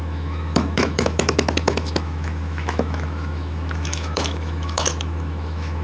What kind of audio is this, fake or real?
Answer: fake